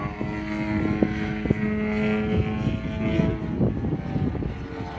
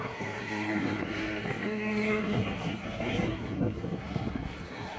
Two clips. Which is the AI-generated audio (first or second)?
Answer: second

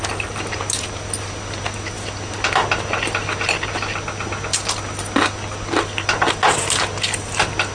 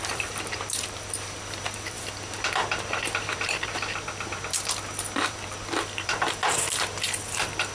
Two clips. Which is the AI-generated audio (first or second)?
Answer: second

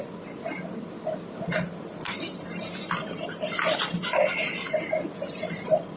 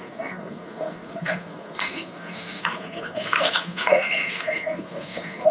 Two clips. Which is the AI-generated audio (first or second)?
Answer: second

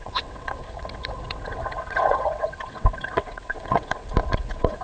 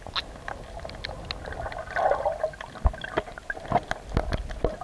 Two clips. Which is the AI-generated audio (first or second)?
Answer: first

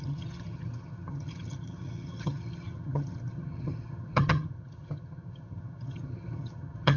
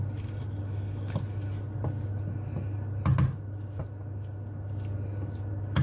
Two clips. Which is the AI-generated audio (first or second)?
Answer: first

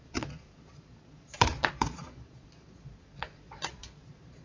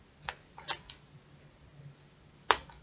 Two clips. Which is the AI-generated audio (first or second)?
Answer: first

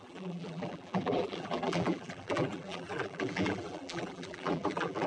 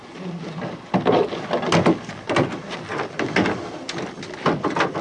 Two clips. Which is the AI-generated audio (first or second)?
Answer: first